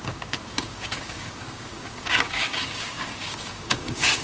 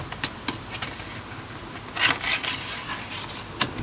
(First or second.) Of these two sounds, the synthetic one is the first